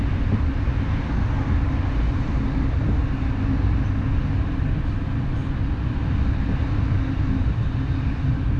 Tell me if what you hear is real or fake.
real